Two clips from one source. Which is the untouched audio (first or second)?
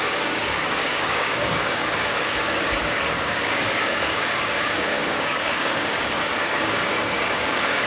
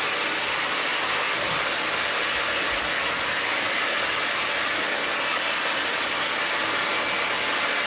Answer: second